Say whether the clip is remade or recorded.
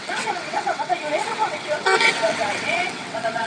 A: remade